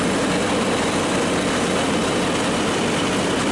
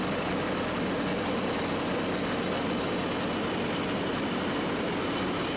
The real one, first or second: second